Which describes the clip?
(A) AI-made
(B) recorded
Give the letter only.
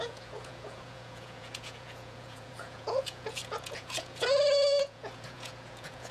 A